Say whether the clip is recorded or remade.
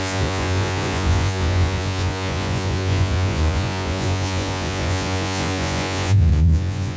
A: remade